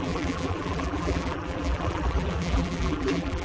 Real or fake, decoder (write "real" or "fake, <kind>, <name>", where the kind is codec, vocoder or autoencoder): fake, vocoder, BigVGAN v2